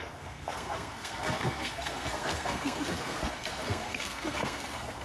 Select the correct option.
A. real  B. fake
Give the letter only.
B